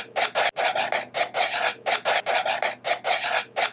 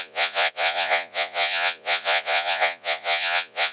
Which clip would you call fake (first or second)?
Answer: second